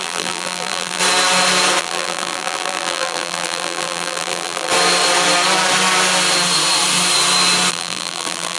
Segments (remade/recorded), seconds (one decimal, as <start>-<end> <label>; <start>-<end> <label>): 0.0-1.0 remade; 1.0-1.8 recorded; 1.8-4.7 remade; 4.7-7.7 recorded; 7.7-8.6 remade